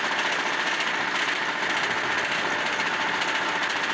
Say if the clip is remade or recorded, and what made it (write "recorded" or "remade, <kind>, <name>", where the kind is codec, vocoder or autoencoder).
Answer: recorded